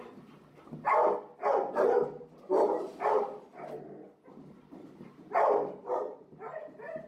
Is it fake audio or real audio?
real